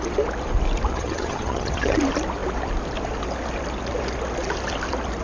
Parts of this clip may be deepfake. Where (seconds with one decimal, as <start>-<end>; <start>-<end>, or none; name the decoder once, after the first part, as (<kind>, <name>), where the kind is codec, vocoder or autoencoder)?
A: 0.9-2.0 (vocoder, HiFi-GAN)